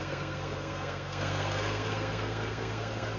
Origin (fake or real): fake